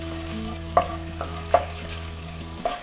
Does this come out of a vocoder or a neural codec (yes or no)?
yes